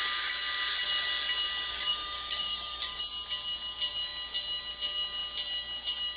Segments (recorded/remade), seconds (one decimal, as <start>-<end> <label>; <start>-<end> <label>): 0.0-1.7 recorded; 1.7-3.0 remade; 3.0-6.2 recorded